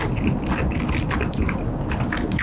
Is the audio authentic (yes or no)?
yes